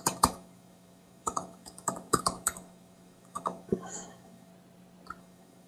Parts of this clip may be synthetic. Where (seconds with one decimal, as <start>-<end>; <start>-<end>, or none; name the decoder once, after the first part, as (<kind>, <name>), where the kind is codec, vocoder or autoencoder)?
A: 0.0-4.5 (autoencoder, DAC-VAE); 5.2-5.7